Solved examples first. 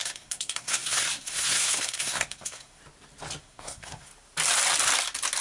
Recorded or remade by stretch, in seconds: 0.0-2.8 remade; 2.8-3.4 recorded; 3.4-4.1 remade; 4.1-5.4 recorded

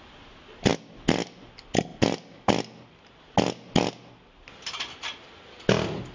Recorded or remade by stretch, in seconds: 0.0-6.1 recorded

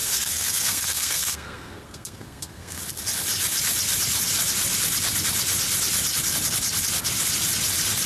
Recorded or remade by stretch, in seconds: 0.0-2.8 remade; 2.8-8.1 recorded

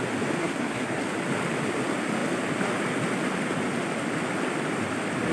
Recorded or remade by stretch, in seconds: 0.0-0.4 recorded; 0.4-1.0 remade; 1.0-5.3 recorded

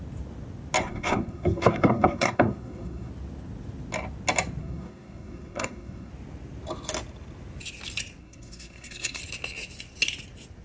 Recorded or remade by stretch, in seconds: 0.0-0.8 recorded; 0.8-3.1 remade; 3.1-4.6 recorded; 4.6-6.1 remade; 6.1-8.2 recorded; 8.2-9.2 remade; 9.2-10.6 recorded

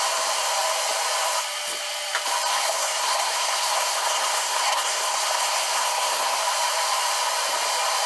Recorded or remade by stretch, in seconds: 0.0-2.5 recorded; 2.5-6.4 remade; 6.4-8.1 recorded

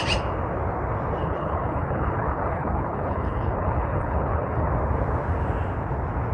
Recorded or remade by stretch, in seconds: 0.0-1.2 recorded; 1.2-4.7 remade; 4.7-6.3 recorded